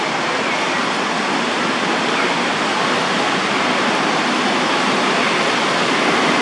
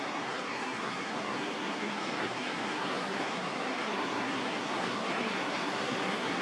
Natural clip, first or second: first